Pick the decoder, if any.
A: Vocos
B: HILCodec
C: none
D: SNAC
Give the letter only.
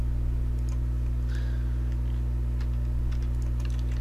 C